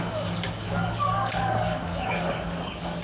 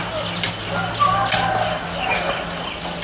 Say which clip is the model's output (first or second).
first